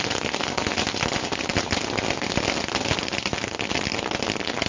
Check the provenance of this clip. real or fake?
real